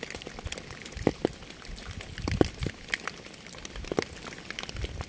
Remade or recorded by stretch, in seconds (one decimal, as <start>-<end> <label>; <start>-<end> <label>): 0.0-5.1 recorded